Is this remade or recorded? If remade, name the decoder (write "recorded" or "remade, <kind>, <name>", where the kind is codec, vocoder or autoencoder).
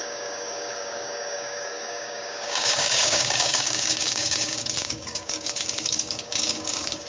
remade, codec, DAC